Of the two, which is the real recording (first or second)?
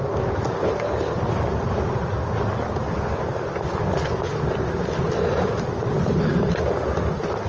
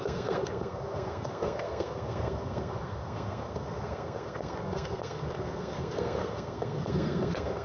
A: first